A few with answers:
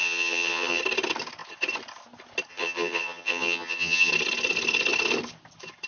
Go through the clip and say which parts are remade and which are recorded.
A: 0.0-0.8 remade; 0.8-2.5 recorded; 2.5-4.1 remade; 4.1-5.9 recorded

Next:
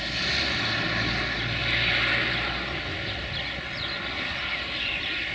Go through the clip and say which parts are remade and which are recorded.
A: 0.0-5.3 recorded

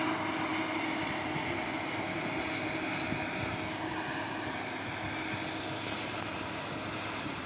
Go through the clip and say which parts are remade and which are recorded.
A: 0.0-7.5 recorded

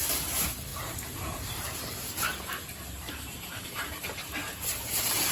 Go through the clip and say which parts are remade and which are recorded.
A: 0.0-0.7 recorded; 0.7-1.9 remade; 1.9-2.3 recorded; 2.3-4.0 remade; 4.0-4.4 recorded; 4.4-5.3 remade

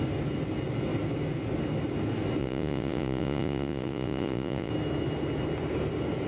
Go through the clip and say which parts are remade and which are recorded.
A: 0.0-2.4 recorded; 2.4-4.7 remade; 4.7-6.3 recorded

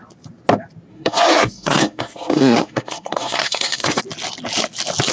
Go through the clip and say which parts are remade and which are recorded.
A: 0.0-0.9 recorded; 0.9-4.0 remade; 4.0-5.1 recorded